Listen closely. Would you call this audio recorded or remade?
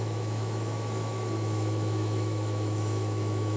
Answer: remade